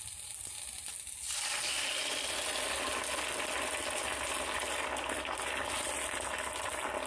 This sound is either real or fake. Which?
real